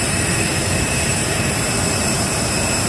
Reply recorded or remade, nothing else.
remade